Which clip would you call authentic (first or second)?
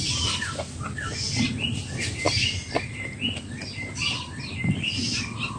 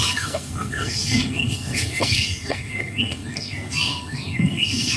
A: first